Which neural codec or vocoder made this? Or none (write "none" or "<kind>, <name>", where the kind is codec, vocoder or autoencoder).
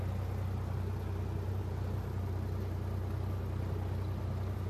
none